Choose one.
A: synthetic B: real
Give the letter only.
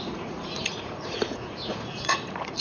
A